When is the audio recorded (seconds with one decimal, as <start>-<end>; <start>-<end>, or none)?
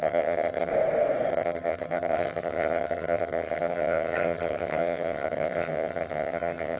0.7-1.3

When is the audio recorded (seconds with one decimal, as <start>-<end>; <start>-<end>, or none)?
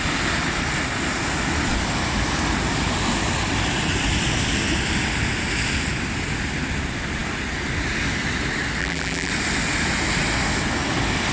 0.0-8.8; 9.3-11.3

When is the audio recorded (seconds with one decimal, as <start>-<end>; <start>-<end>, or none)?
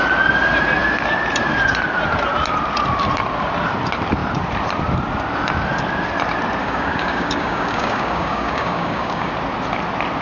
0.0-6.6; 9.3-10.2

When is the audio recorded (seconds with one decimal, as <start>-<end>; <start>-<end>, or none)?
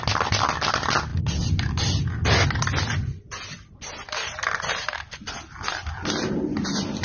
0.0-7.0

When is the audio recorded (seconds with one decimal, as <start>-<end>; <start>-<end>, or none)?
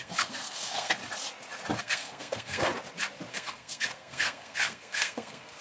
1.0-1.8; 2.7-3.3